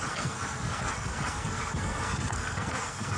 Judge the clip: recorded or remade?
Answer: remade